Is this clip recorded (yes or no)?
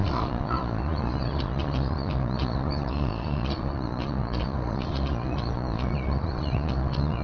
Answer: no